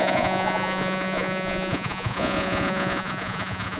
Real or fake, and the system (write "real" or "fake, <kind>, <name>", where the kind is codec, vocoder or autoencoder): fake, vocoder, Vocos